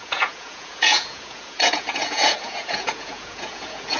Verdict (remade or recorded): remade